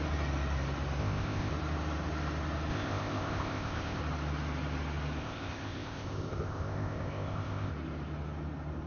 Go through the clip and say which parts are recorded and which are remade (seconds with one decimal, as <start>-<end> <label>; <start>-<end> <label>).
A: 0.0-1.0 recorded; 1.0-1.5 remade; 1.5-2.7 recorded; 2.7-4.0 remade; 4.0-5.2 recorded; 5.2-7.7 remade; 7.7-8.9 recorded